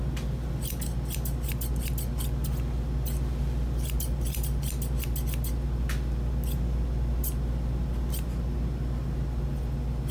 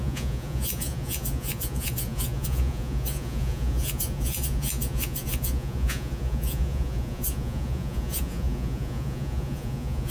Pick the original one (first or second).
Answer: first